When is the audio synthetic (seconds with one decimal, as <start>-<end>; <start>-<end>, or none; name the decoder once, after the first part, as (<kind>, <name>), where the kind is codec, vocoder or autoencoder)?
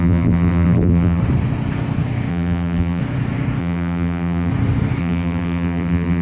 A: 0.0-1.2 (vocoder, BigVGAN v2); 2.3-3.0; 3.6-4.5; 5.0-6.2